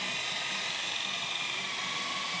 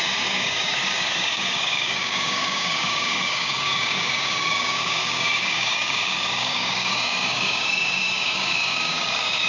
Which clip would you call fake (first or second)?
second